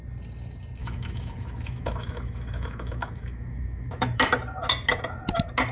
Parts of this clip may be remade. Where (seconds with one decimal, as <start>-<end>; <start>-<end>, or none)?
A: 0.8-4.2